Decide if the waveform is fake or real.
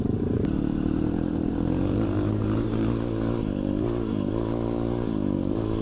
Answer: fake